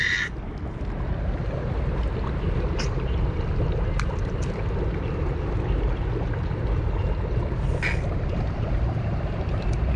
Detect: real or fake real